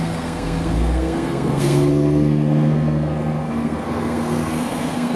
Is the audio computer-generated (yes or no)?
yes